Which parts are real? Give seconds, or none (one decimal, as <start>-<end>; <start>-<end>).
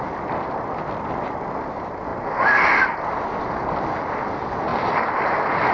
0.0-4.7